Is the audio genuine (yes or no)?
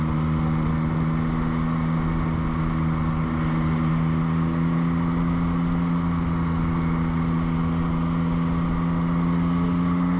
yes